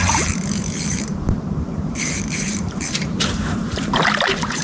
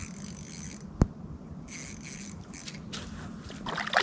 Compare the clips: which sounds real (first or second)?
second